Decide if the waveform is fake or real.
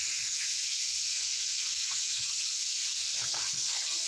fake